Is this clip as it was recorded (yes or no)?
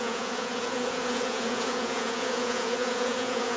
no